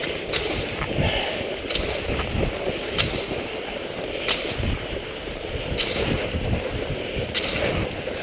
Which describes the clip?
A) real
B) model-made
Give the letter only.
A